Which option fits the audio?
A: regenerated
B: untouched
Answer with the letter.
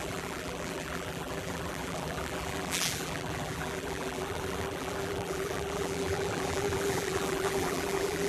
A